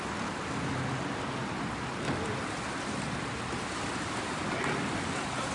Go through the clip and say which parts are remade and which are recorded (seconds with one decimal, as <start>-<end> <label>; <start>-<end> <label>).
0.0-5.5 recorded